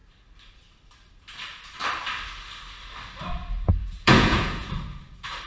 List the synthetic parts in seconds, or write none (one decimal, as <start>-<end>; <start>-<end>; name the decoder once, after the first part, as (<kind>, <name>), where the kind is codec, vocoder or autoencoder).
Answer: 3.8-4.7 (vocoder, Vocos)